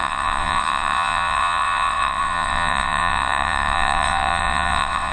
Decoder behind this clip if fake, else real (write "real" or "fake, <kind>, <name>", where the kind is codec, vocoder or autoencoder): fake, vocoder, WaveNeXt